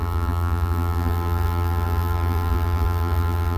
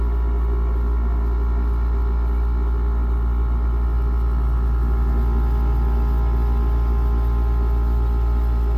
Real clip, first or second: second